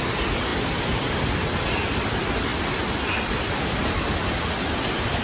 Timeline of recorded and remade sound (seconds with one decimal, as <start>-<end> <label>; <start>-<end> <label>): 0.0-0.5 recorded; 0.5-1.1 remade; 1.1-2.5 recorded; 2.5-4.7 remade; 4.7-5.2 recorded